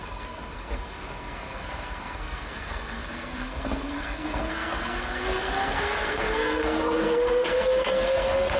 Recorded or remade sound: remade